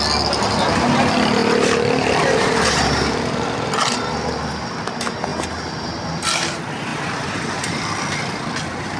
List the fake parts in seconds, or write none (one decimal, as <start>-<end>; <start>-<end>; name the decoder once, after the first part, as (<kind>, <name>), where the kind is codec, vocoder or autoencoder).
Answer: 1.4-3.8 (vocoder, BigVGAN v2); 6.9-7.9